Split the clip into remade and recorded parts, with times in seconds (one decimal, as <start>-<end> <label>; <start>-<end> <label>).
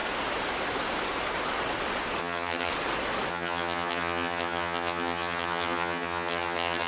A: 0.0-2.2 recorded; 2.2-2.7 remade; 2.7-3.3 recorded; 3.3-6.9 remade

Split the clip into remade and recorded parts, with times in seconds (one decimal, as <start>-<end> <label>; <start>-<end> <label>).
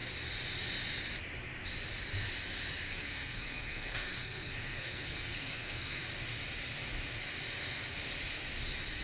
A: 0.0-2.9 recorded; 2.9-6.0 remade; 6.0-9.0 recorded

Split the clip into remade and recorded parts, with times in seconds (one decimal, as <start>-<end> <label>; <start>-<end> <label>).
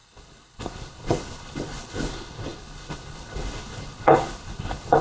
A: 0.0-5.0 remade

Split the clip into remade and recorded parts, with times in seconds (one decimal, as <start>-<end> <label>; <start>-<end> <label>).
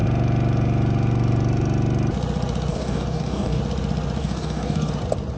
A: 0.0-2.7 recorded; 2.7-3.6 remade; 3.6-4.2 recorded; 4.2-4.9 remade; 4.9-5.4 recorded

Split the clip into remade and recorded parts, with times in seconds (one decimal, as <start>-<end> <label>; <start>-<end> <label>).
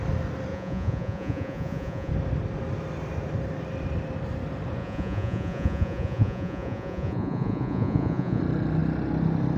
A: 0.0-0.5 recorded; 0.5-2.1 remade; 2.1-4.8 recorded; 4.8-8.4 remade; 8.4-9.6 recorded